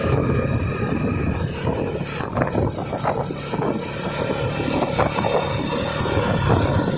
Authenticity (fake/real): real